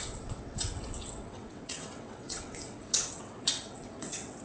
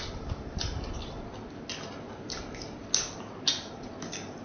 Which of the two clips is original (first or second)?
second